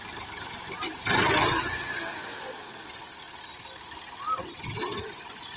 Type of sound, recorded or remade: recorded